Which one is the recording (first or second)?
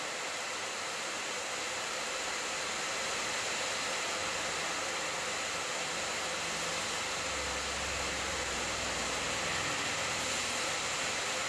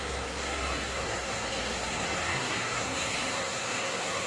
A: first